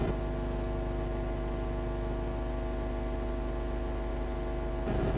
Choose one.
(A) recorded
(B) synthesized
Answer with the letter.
A